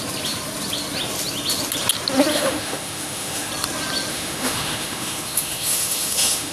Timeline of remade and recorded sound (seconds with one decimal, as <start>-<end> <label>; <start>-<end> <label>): 0.0-2.3 recorded; 2.3-3.5 remade; 3.5-4.1 recorded; 4.1-6.5 remade